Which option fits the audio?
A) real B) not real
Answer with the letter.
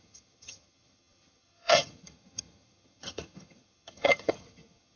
B